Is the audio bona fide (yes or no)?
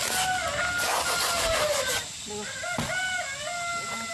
yes